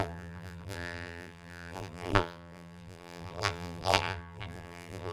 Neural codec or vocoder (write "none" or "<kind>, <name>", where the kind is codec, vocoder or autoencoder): vocoder, BigVGAN v2